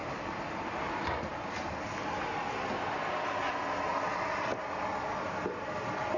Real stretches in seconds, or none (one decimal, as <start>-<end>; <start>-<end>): 0.0-6.2